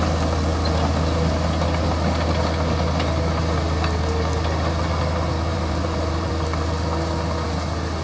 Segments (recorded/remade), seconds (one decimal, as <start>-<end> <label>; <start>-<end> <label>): 0.0-5.5 recorded; 5.5-6.3 remade; 6.3-8.0 recorded